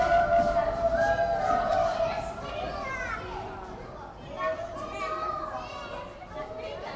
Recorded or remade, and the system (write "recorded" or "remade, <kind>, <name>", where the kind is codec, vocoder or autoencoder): recorded